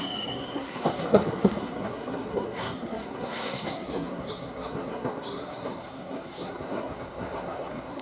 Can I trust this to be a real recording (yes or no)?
no